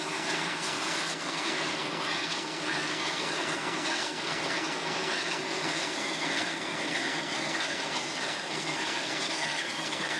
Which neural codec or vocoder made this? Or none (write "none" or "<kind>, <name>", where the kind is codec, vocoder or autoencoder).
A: codec, SNAC